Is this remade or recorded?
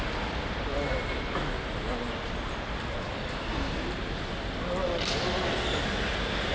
recorded